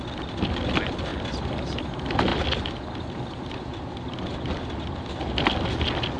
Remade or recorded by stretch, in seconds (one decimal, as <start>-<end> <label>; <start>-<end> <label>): 0.0-6.2 recorded